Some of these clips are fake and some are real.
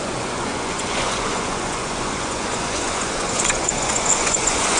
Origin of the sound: fake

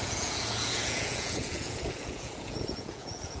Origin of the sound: fake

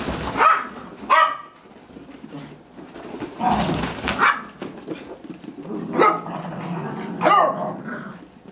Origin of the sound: real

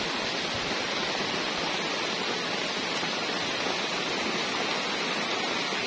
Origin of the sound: real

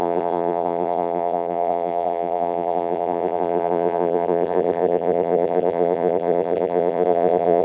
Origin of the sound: fake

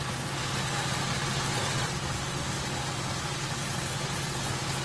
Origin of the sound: real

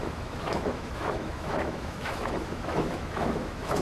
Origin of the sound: fake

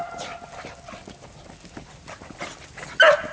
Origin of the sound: real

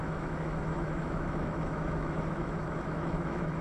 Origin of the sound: fake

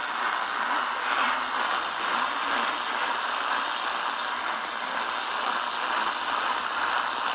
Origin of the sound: real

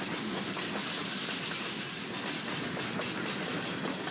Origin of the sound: real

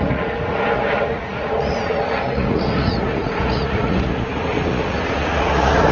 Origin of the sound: fake